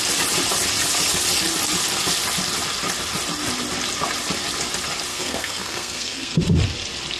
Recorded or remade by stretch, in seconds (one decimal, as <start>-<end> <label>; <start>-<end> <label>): 0.0-5.1 recorded; 5.1-6.4 remade; 6.4-7.2 recorded